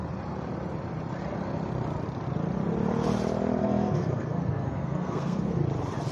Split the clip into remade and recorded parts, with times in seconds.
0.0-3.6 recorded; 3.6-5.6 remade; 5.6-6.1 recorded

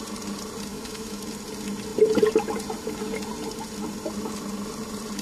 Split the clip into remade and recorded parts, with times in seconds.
0.0-0.7 recorded; 0.7-1.2 remade; 1.2-5.2 recorded

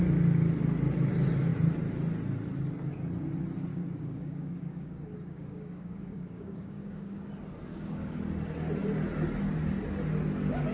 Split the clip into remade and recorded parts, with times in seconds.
0.0-3.7 recorded; 3.7-7.3 remade; 7.3-7.7 recorded; 7.7-8.2 remade; 8.2-10.7 recorded

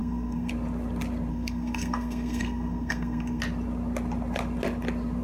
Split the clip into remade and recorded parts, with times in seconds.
0.0-0.5 remade; 0.5-1.3 recorded; 1.3-3.4 remade; 3.4-5.2 recorded

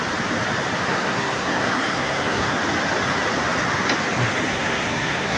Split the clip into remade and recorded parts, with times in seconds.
0.0-0.9 recorded; 0.9-2.6 remade; 2.6-4.5 recorded; 4.5-5.4 remade

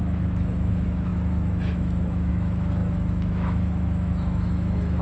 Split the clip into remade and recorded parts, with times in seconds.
0.0-5.0 remade

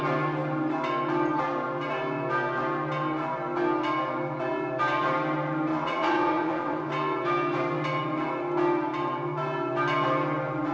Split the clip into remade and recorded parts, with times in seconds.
0.0-5.7 recorded; 5.7-6.9 remade; 6.9-10.7 recorded

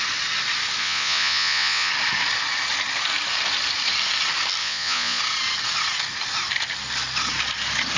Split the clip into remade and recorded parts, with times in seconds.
0.0-0.8 recorded; 0.8-1.9 remade; 1.9-4.6 recorded; 4.6-5.2 remade; 5.2-8.0 recorded